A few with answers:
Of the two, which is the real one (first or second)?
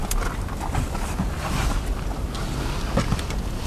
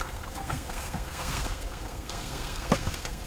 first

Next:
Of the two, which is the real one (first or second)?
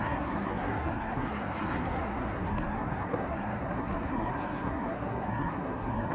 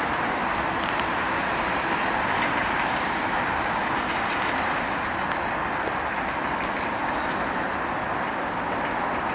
second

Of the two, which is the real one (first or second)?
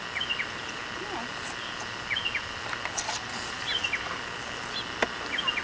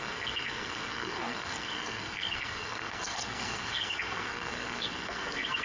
first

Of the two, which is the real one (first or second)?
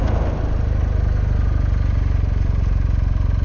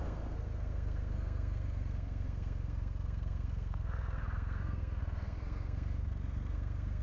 first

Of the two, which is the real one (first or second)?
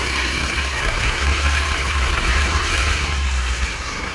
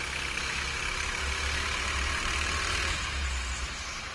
second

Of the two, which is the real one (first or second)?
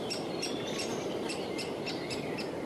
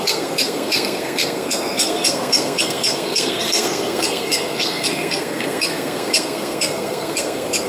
first